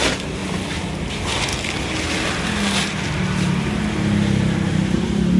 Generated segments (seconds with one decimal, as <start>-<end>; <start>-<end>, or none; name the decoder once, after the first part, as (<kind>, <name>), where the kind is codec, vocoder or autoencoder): none